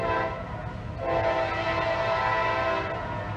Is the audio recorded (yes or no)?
yes